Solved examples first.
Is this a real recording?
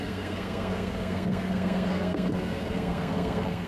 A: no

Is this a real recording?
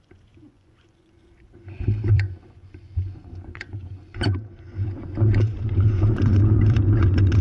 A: no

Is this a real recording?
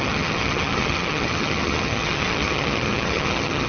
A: no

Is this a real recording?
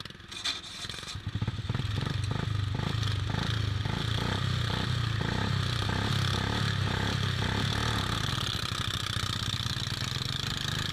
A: yes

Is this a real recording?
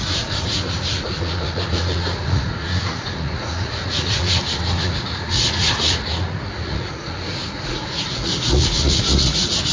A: no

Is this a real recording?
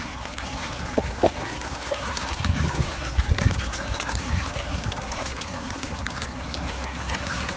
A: no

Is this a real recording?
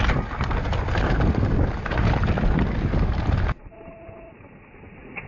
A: yes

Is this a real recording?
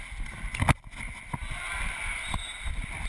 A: yes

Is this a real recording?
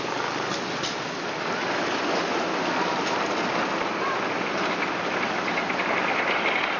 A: yes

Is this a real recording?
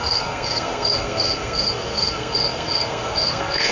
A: no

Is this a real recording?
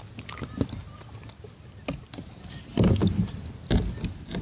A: yes